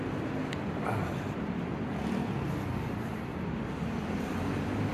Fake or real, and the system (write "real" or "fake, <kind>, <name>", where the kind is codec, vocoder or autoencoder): real